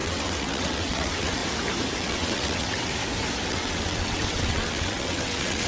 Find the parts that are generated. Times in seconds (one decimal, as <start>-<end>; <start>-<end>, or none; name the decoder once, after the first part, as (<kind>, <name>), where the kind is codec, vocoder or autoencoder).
0.0-1.4 (vocoder, WaveNeXt); 2.0-2.9; 3.5-5.7